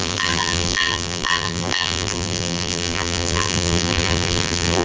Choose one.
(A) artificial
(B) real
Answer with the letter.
A